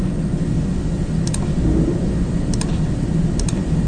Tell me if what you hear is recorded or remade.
recorded